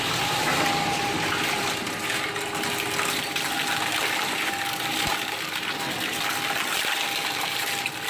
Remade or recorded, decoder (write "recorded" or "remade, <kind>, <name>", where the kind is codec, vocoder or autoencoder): recorded